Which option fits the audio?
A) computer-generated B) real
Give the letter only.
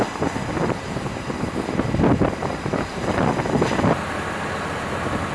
B